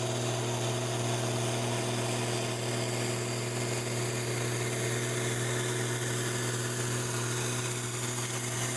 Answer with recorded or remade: recorded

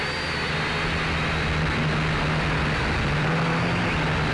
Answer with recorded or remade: recorded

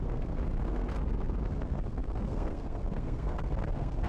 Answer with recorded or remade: remade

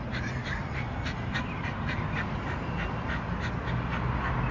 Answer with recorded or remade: recorded